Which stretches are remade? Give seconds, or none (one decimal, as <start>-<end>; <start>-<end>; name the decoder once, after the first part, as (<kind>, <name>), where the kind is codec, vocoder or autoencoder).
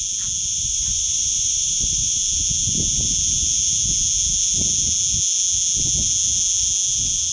0.5-2.2 (vocoder, Vocos)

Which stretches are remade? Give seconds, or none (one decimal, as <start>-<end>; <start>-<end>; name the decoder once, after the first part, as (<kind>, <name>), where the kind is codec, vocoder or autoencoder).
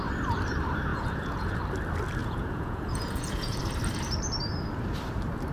0.9-1.6 (vocoder, Vocos); 2.2-3.6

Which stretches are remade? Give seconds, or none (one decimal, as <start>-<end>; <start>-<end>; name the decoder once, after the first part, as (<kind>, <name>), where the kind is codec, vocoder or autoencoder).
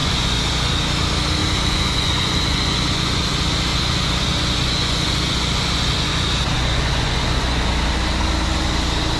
0.0-0.7 (vocoder, Vocos); 1.4-3.3; 3.7-7.7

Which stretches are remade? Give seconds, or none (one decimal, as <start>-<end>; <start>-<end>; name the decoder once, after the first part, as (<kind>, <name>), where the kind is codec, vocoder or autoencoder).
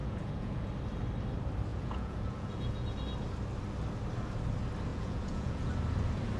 0.0-0.7 (vocoder, Vocos); 1.7-3.0; 4.9-5.7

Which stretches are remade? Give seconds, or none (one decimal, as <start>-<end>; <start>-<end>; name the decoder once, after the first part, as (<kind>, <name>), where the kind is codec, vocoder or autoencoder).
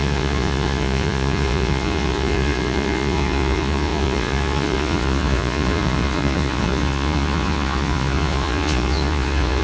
0.0-9.6 (vocoder, Vocos)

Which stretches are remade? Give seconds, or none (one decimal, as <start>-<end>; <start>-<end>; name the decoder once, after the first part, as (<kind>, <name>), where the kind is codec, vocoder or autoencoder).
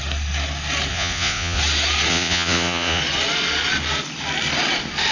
0.9-1.6 (vocoder, Vocos); 2.1-3.0